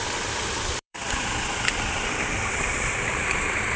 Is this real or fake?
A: fake